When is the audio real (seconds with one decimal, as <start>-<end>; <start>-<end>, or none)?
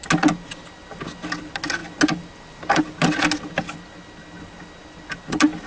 0.0-5.7